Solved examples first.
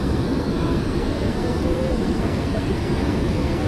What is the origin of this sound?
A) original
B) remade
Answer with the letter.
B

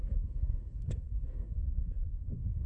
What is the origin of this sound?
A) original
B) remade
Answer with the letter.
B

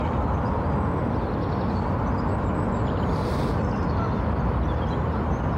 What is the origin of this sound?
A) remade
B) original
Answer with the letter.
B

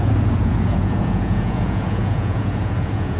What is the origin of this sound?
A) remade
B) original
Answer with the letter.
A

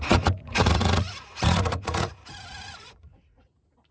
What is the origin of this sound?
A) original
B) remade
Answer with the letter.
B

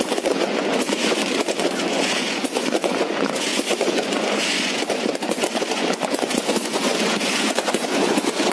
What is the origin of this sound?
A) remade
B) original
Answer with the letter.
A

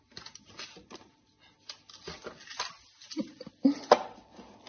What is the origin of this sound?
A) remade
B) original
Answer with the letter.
B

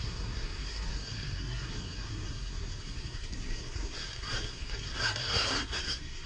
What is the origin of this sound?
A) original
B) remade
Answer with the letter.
B